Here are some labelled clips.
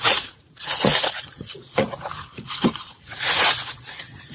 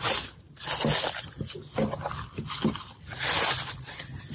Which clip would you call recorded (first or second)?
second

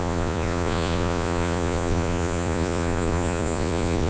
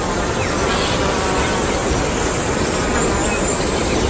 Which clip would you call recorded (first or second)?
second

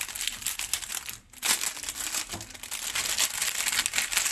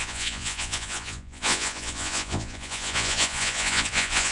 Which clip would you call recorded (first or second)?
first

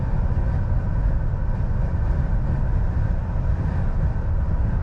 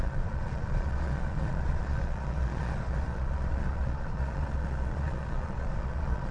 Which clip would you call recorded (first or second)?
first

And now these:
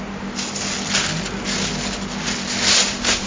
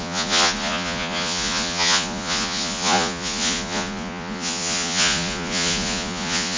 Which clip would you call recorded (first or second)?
first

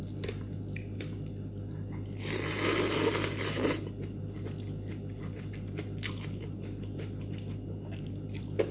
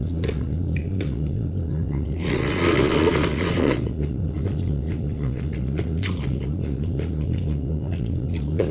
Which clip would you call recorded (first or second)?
first